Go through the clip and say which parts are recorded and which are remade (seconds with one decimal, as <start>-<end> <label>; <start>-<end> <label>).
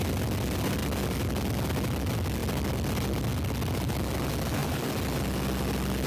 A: 0.0-6.1 recorded